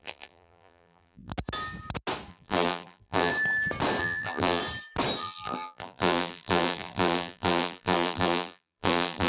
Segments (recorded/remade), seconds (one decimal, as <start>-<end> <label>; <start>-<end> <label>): 0.0-1.3 remade; 1.3-2.3 recorded; 2.3-3.3 remade; 3.3-4.0 recorded; 4.0-4.6 remade; 4.6-5.2 recorded; 5.2-9.3 remade